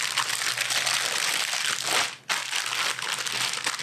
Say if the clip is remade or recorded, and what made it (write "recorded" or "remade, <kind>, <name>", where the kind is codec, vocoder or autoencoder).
recorded